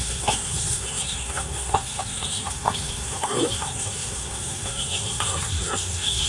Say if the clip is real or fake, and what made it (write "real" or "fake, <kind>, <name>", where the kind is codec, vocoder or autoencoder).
fake, codec, SNAC